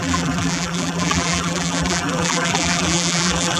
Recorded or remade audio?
remade